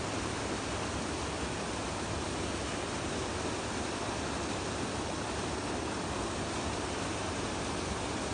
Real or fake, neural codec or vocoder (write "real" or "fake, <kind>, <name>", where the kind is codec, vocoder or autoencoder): fake, vocoder, BigVGAN v2